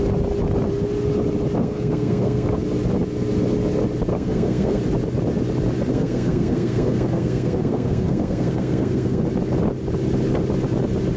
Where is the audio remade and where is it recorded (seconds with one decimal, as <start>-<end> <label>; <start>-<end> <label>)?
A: 0.0-1.6 recorded; 1.6-2.6 remade; 2.6-4.1 recorded; 4.1-4.8 remade; 4.8-5.9 recorded; 5.9-9.2 remade; 9.2-11.2 recorded